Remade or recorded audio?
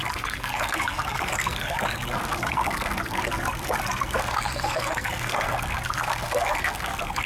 remade